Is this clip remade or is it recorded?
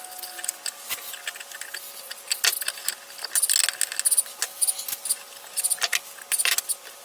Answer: recorded